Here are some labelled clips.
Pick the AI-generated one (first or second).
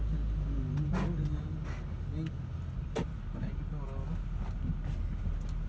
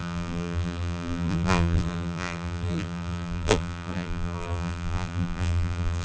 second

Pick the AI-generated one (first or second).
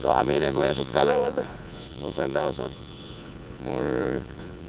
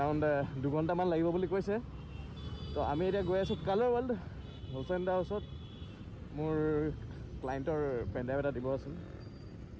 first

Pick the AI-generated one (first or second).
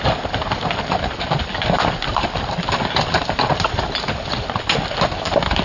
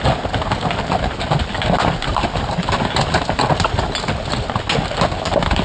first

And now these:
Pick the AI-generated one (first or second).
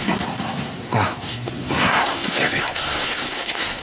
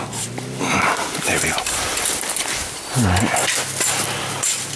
first